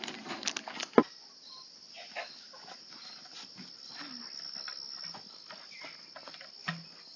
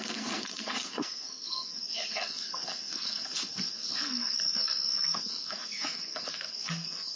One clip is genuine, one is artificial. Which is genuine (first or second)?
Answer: first